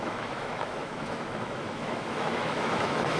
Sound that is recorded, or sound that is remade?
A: remade